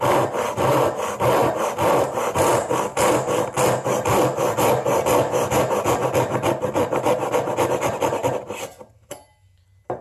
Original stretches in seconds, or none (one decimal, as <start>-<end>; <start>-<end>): 0.0-10.0